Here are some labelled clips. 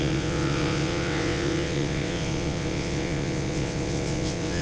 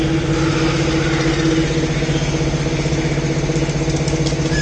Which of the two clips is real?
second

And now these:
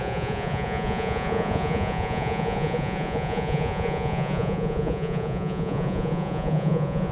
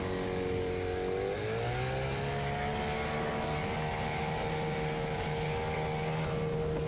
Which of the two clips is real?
second